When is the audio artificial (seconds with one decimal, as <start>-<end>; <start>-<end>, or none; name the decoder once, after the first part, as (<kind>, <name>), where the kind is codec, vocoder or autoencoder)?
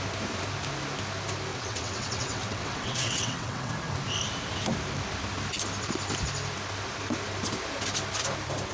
1.5-3.7 (vocoder, WaveNeXt)